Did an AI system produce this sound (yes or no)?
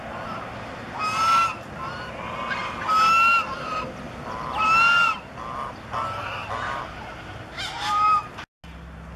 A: no